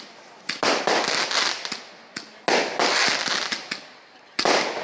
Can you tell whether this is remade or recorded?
recorded